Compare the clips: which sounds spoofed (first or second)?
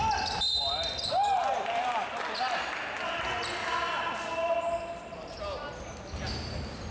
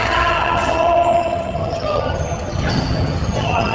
second